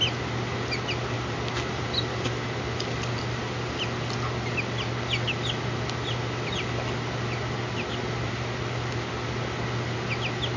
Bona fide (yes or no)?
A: yes